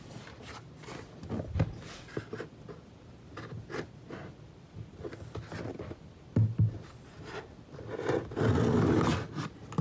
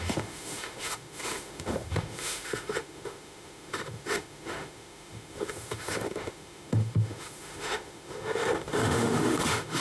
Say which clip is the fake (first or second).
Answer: second